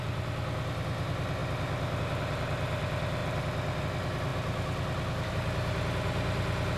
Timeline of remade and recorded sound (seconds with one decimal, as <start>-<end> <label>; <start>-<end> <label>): 0.0-6.8 recorded